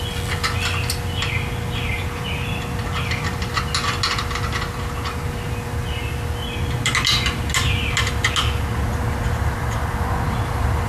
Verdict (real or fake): real